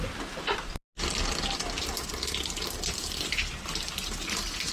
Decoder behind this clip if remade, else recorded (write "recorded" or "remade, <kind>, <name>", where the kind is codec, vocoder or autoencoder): recorded